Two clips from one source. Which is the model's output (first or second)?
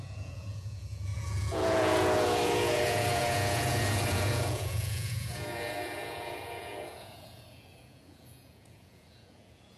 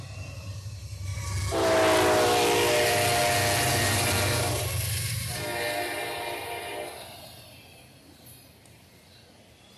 first